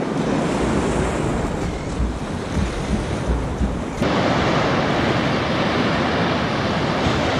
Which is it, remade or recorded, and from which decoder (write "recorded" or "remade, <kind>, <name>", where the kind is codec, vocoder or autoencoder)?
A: recorded